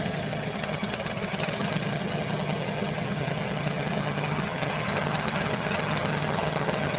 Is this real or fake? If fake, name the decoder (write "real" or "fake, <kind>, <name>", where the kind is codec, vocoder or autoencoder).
fake, vocoder, HiFi-GAN